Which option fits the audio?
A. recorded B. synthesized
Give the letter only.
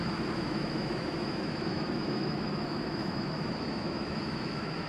B